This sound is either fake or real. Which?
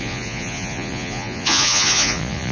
fake